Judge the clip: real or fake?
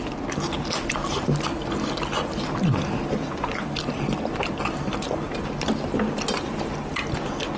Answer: real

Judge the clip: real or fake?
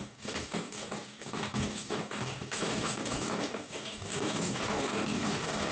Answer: fake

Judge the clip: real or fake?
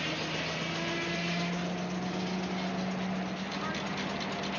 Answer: real